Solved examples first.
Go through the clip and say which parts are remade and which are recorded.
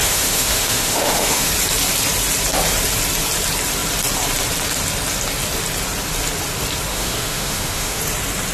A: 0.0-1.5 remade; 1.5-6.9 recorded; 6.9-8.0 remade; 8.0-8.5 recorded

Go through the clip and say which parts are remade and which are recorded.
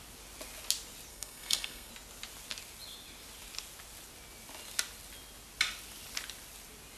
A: 0.0-1.1 recorded; 1.1-1.9 remade; 1.9-7.0 recorded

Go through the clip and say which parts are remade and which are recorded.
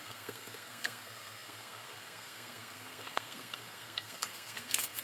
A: 0.0-5.0 remade